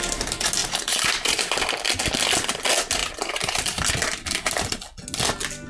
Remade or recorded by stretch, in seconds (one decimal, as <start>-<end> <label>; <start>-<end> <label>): 0.0-0.6 recorded; 0.6-1.4 remade; 1.4-3.0 recorded; 3.0-3.9 remade; 3.9-5.7 recorded